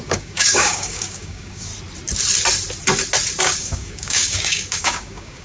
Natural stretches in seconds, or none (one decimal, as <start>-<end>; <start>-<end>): 1.7-3.4